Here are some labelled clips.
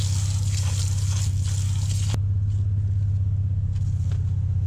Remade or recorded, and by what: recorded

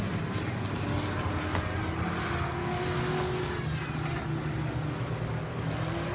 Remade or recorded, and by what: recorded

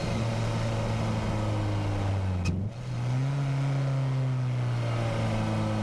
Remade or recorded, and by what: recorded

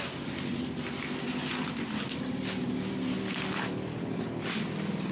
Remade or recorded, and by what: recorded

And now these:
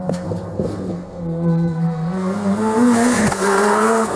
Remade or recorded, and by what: remade, codec, SNAC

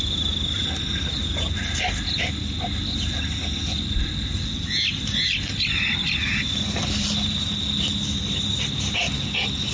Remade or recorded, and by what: recorded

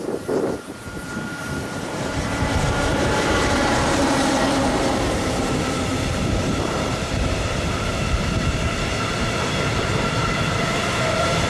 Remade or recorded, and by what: remade, vocoder, BigVGAN v2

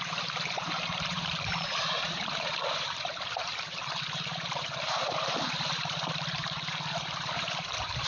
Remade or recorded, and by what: remade, vocoder, BigVGAN v2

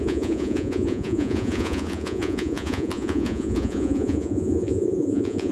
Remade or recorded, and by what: remade, vocoder, Vocos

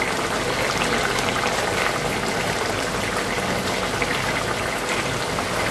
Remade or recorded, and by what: recorded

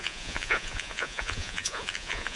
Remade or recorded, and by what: remade, vocoder, Vocos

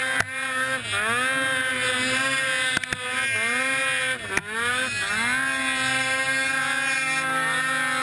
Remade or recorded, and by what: recorded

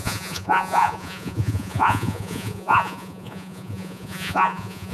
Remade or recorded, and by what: remade, vocoder, Vocos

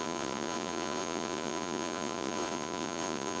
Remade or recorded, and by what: remade, vocoder, Vocos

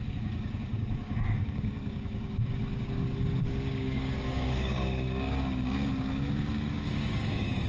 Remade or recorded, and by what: remade, codec, DAC